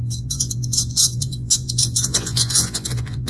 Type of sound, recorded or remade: remade